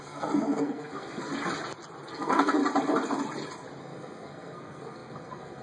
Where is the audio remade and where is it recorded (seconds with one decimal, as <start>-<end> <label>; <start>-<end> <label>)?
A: 0.0-1.3 remade; 1.3-2.1 recorded; 2.1-2.6 remade; 2.6-3.8 recorded; 3.8-5.6 remade